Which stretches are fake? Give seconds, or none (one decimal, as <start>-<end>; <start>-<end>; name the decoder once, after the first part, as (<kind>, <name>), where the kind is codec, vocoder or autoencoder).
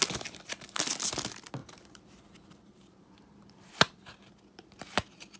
1.6-4.8 (vocoder, BigVGAN v2)